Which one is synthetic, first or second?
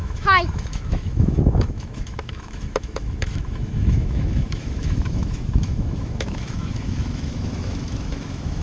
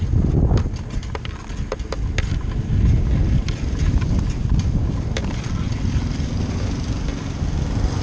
first